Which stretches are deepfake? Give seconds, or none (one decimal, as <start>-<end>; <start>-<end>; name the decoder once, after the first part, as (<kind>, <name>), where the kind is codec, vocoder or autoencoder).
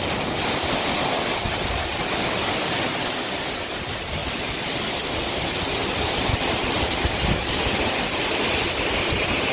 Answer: none